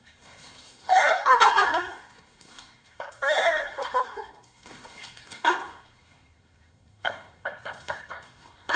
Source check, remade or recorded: remade